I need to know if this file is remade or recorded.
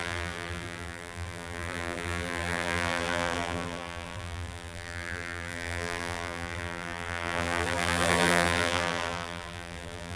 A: remade